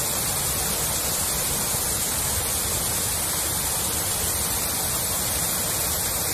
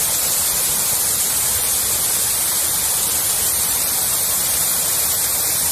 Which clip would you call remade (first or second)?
second